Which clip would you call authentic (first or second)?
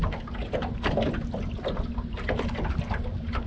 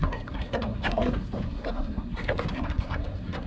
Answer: first